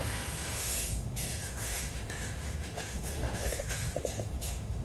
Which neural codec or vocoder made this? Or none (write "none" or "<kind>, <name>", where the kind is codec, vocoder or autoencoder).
autoencoder, DAC-VAE